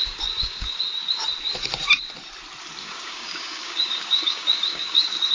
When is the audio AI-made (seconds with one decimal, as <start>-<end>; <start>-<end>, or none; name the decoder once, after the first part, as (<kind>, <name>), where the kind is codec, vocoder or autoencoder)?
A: 0.0-0.8 (codec, DAC); 2.8-5.3